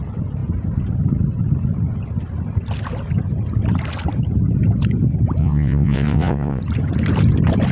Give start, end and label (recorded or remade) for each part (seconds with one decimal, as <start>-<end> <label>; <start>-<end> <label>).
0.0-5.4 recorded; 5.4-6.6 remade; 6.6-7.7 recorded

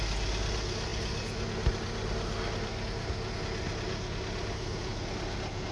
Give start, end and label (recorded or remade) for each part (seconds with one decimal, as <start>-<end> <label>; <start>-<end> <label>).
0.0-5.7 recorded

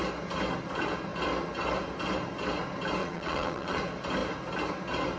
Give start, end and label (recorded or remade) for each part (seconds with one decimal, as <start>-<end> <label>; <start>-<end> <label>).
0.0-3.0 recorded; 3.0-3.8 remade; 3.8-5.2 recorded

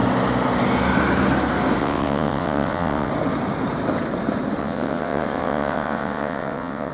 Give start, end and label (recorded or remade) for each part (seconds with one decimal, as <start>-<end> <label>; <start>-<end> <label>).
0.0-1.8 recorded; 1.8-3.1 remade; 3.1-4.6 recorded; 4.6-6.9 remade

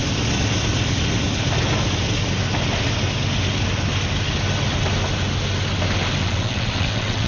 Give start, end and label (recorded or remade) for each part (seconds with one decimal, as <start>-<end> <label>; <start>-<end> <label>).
0.0-6.2 recorded; 6.2-7.3 remade

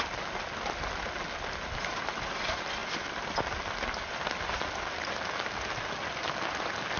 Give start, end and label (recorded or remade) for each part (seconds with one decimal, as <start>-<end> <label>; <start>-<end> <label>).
0.0-7.0 recorded

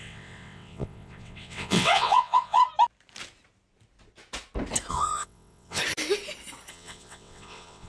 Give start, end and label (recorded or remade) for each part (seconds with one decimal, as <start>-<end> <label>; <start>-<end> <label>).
0.0-2.6 remade; 2.6-4.9 recorded; 4.9-5.8 remade; 5.8-6.7 recorded; 6.7-7.9 remade

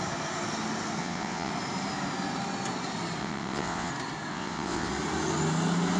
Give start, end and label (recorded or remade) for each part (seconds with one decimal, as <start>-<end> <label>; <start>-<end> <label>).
0.0-1.0 recorded; 1.0-1.5 remade; 1.5-3.2 recorded; 3.2-3.9 remade; 3.9-4.3 recorded; 4.3-4.9 remade; 4.9-6.0 recorded